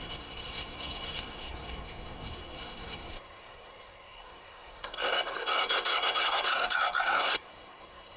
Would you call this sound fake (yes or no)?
yes